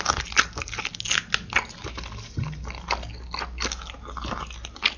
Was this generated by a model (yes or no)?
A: no